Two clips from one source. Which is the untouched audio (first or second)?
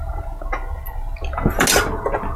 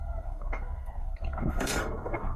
first